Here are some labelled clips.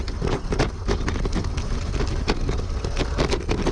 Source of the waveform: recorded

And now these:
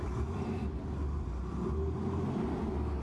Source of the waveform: recorded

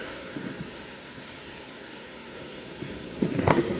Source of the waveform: remade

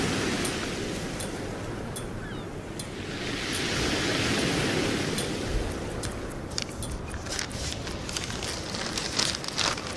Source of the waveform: recorded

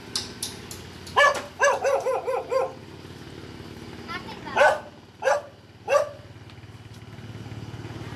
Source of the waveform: recorded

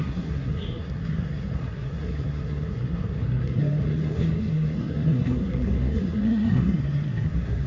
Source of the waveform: remade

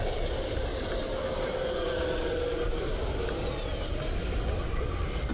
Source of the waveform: recorded